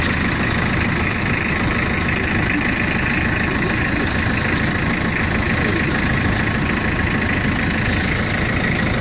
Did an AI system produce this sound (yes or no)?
no